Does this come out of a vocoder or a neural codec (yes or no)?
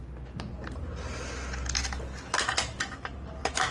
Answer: no